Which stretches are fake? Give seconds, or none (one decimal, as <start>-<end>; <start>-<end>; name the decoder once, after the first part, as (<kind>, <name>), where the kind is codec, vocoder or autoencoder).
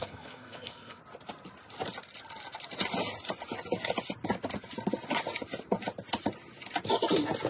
0.0-1.0 (codec, SNAC)